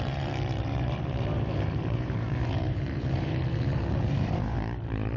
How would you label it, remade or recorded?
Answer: remade